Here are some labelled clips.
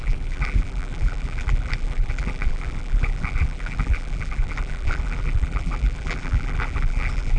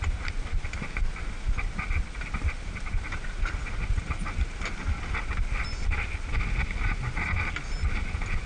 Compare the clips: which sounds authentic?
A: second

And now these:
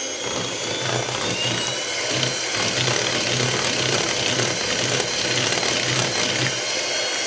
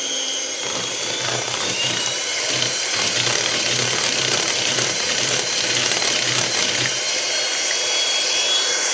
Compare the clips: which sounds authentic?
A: first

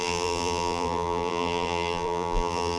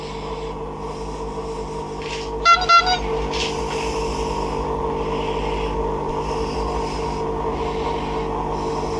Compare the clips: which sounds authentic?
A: second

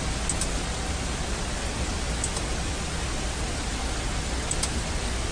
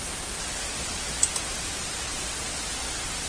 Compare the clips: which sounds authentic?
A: first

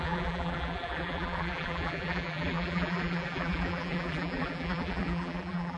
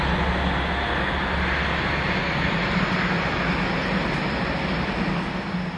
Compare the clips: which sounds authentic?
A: second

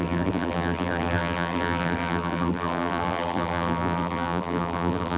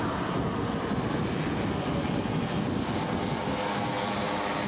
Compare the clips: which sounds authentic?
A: second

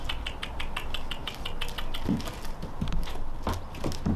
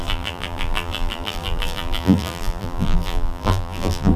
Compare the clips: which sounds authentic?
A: first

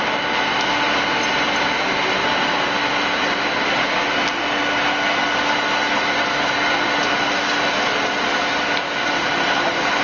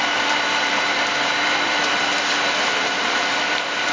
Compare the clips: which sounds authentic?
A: first